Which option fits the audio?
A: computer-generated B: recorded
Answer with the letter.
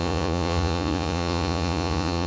A